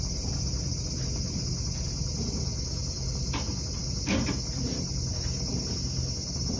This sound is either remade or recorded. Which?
recorded